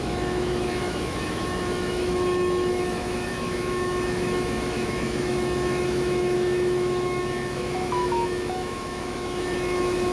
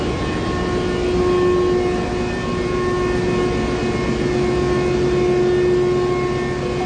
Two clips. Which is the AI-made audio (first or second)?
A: first